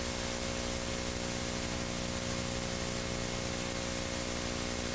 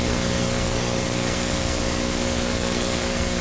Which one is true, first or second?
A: first